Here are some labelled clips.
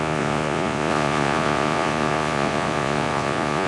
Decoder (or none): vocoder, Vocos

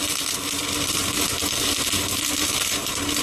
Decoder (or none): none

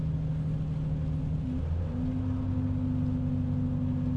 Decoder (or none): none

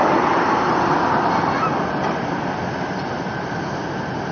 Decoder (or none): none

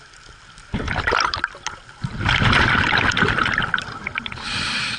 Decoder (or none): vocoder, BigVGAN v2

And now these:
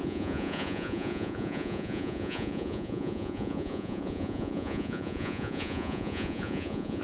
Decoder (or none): vocoder, Vocos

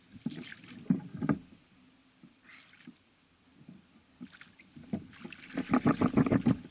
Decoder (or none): none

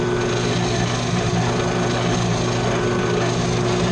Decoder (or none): none